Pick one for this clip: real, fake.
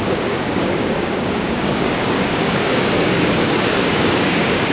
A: fake